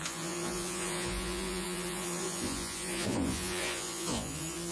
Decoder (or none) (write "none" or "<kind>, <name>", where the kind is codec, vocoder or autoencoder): vocoder, Vocos